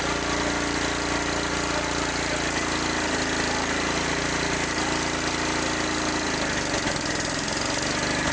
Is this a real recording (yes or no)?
yes